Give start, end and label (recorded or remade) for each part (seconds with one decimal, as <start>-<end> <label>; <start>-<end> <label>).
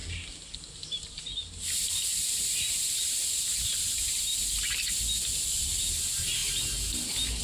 0.0-7.4 recorded